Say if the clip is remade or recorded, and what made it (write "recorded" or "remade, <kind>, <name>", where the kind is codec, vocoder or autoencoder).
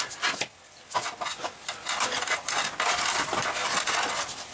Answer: recorded